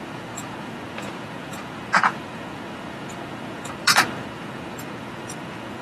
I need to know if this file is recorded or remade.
remade